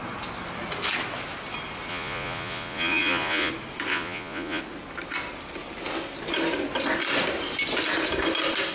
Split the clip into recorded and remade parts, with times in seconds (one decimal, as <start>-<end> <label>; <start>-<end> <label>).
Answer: 0.0-1.9 recorded; 1.9-3.5 remade; 3.5-3.9 recorded; 3.9-4.6 remade; 4.6-8.7 recorded